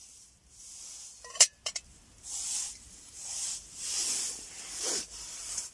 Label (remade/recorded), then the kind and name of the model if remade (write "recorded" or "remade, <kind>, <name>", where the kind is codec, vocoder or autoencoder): recorded